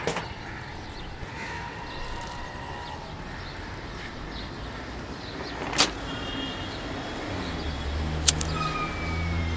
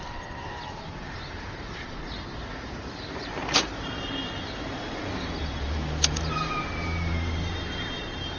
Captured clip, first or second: first